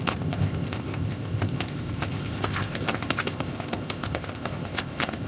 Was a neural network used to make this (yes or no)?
yes